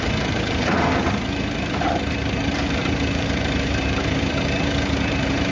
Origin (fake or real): fake